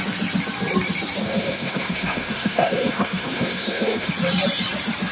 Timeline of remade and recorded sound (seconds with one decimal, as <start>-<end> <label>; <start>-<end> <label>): 0.0-1.2 recorded; 1.2-4.1 remade; 4.1-5.1 recorded